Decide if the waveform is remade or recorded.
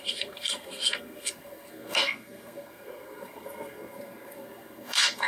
remade